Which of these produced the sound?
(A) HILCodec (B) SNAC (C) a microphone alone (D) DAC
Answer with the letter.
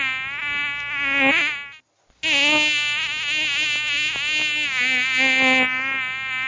C